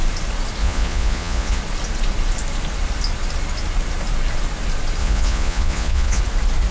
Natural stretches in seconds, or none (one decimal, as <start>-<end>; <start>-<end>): 0.0-0.6; 1.6-5.0; 6.2-6.7